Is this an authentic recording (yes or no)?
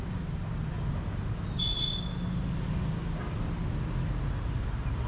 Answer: yes